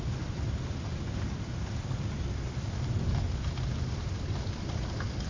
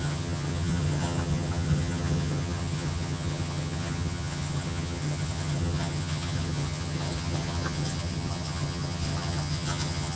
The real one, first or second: first